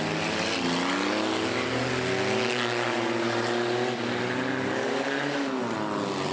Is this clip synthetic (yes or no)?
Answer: no